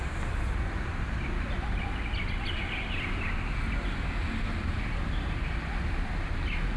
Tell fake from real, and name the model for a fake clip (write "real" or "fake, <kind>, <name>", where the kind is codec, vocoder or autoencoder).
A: real